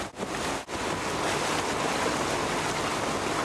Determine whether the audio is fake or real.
real